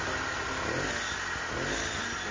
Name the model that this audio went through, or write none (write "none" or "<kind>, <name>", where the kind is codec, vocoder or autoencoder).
none